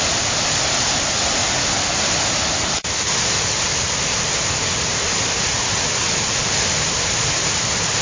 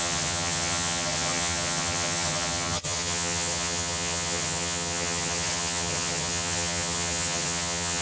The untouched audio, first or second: first